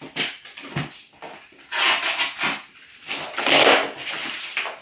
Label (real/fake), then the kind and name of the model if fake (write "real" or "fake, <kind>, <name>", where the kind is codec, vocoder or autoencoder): real